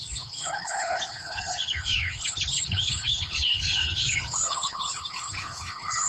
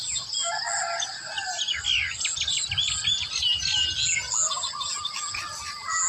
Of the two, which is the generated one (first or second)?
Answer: first